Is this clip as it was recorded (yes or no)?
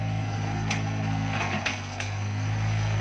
no